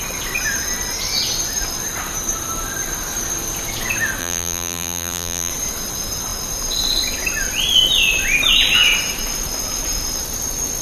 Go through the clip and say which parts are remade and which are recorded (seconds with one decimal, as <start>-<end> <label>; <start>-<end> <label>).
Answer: 0.0-4.2 recorded; 4.2-5.5 remade; 5.5-10.8 recorded